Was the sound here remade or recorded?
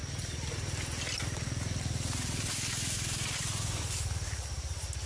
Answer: recorded